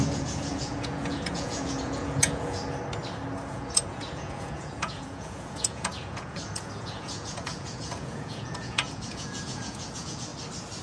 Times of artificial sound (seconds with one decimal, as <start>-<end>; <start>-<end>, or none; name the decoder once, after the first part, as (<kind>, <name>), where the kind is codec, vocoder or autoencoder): 0.0-2.6 (vocoder, Vocos); 3.5-10.3